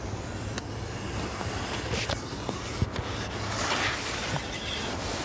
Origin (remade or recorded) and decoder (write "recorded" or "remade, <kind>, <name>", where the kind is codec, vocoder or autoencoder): recorded